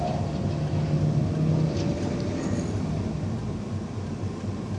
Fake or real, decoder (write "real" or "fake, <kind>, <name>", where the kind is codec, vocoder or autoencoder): real